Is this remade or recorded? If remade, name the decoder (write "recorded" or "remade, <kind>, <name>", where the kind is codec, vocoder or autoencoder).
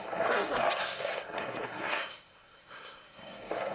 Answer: remade, codec, SNAC